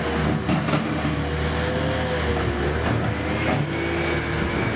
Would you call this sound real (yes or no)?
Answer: yes